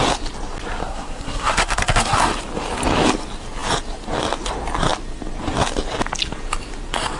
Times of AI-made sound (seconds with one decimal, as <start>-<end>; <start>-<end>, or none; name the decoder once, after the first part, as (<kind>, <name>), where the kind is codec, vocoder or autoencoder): 0.8-2.3 (codec, SNAC)